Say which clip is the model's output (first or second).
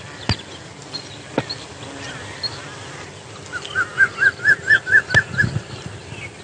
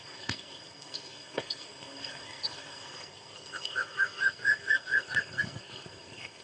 second